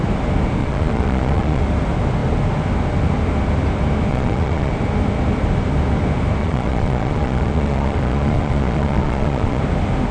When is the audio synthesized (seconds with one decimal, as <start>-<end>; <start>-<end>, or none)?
0.6-1.6; 4.1-4.7; 6.4-9.6